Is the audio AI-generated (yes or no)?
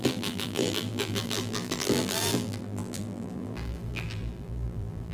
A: yes